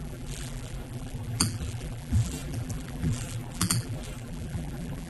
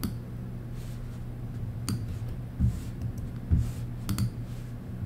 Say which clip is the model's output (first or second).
first